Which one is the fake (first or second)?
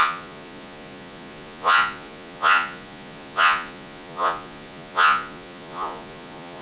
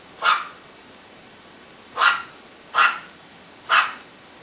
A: first